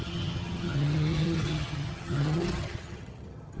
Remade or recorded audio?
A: remade